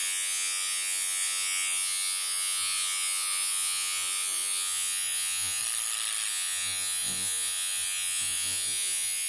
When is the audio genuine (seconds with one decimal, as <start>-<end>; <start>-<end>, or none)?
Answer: 5.6-6.3